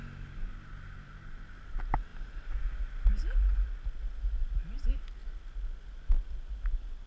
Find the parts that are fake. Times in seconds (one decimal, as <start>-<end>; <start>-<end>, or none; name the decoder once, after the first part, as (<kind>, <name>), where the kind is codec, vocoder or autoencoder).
none